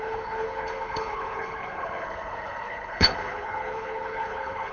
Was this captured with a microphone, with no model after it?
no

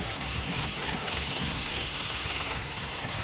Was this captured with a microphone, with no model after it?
no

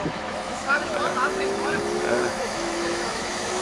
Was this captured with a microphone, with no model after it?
no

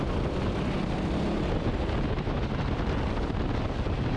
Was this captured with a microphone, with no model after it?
yes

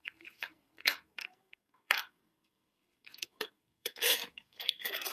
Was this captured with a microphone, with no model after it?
no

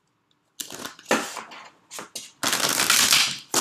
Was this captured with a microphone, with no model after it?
yes